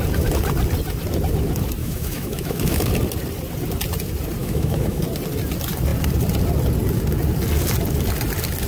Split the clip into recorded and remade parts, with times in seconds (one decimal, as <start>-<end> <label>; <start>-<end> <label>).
0.0-1.8 recorded; 1.8-2.9 remade; 2.9-4.4 recorded; 4.4-5.0 remade; 5.0-8.7 recorded